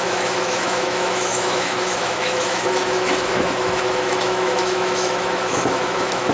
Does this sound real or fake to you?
fake